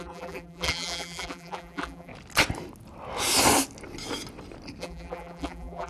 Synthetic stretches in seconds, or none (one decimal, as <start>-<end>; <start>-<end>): 0.0-2.1; 4.8-5.9